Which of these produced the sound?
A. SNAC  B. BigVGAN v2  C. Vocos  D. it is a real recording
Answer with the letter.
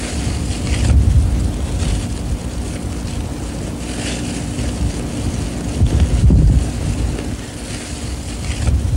D